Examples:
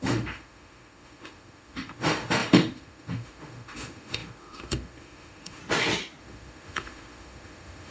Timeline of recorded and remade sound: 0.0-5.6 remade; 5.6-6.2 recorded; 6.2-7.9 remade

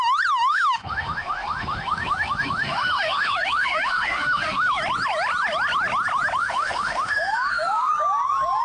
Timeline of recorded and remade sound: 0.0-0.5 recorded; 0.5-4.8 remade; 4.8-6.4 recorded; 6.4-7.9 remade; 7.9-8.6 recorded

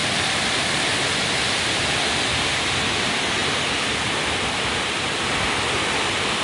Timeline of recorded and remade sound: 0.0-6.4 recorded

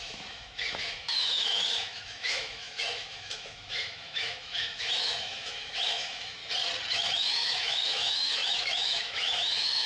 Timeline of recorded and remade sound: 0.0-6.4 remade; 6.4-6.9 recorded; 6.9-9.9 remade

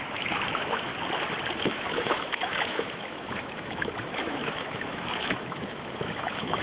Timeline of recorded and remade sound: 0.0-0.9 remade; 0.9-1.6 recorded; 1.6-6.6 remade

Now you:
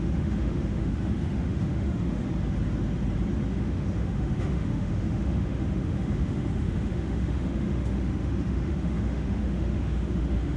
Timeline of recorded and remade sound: 0.0-2.2 remade; 2.2-3.5 recorded; 3.5-10.6 remade

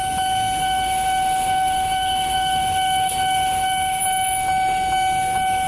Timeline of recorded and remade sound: 0.0-0.6 recorded; 0.6-4.0 remade; 4.0-5.7 recorded